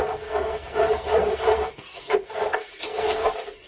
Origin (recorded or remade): remade